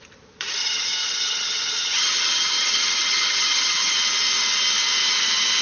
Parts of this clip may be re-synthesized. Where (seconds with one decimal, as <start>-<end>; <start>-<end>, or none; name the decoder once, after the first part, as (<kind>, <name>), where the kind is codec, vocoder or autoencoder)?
0.6-4.0 (vocoder, HiFi-GAN)